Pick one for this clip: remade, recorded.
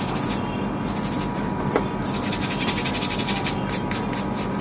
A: recorded